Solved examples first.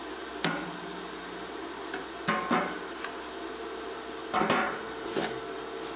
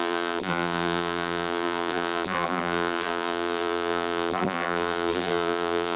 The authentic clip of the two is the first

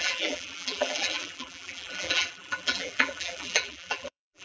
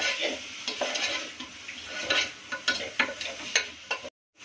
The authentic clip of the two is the second